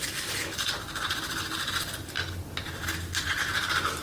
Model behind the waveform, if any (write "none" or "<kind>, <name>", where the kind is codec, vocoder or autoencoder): none